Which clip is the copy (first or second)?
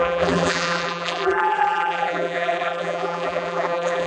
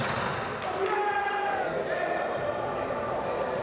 first